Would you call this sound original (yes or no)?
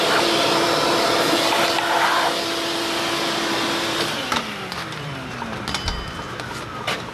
no